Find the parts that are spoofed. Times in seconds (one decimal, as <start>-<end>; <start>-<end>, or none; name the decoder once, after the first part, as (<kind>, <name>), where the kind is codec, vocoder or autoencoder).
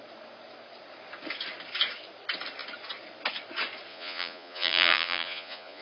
3.9-5.8 (vocoder, Vocos)